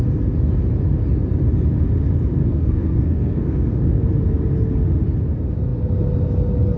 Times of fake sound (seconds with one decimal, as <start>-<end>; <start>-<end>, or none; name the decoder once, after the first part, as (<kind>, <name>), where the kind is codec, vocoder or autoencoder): 2.4-4.0 (codec, SNAC)